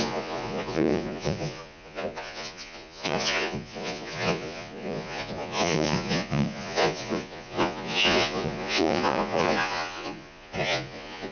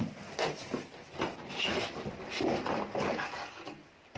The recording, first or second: second